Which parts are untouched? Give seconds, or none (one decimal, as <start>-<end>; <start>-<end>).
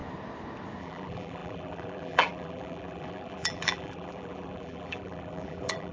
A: 0.0-0.8